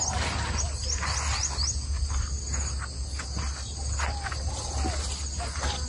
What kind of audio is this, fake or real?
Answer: real